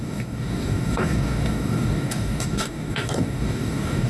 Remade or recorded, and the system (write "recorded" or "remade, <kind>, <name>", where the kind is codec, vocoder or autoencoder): remade, codec, DAC